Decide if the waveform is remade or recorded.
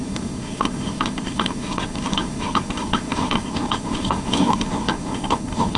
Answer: remade